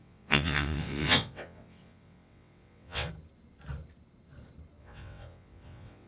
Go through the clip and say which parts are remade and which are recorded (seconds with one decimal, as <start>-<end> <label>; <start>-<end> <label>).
0.0-3.1 remade; 3.1-4.8 recorded; 4.8-6.1 remade